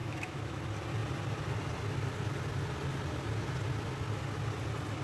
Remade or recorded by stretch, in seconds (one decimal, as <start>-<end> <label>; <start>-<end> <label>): 0.0-0.6 remade; 0.6-5.0 recorded